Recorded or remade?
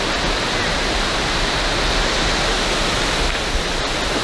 recorded